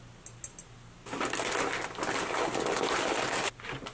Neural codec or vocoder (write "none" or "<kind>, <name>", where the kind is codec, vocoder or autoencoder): none